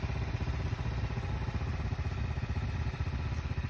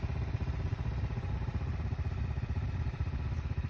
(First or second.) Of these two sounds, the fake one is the second